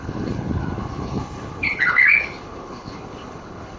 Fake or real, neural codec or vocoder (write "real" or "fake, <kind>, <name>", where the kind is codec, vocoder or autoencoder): fake, codec, HILCodec